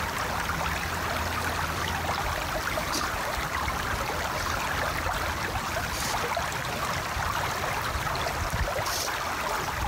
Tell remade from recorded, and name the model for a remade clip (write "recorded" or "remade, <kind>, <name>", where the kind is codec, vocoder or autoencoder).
recorded